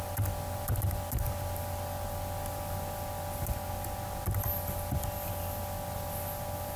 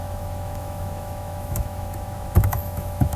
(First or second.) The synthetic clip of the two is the second